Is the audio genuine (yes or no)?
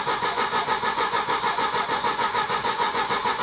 no